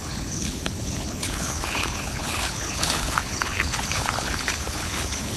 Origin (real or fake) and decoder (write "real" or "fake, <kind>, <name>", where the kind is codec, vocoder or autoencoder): fake, codec, HILCodec